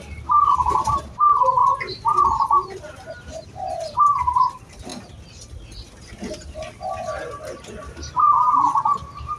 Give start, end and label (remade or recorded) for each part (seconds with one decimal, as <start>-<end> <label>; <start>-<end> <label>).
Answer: 0.0-1.6 remade; 1.6-2.2 recorded; 2.2-4.9 remade; 4.9-7.9 recorded; 7.9-9.4 remade